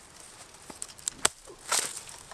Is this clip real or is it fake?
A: real